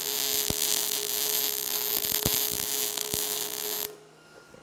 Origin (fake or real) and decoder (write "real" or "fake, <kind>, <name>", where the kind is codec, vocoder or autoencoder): real